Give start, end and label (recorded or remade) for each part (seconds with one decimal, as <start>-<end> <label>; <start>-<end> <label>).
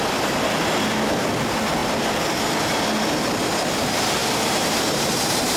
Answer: 0.0-4.2 recorded; 4.2-5.6 remade